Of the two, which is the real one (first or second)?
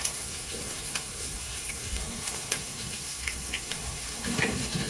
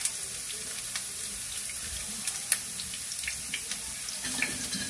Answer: second